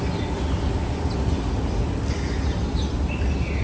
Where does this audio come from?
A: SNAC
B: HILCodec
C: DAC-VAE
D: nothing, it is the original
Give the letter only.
D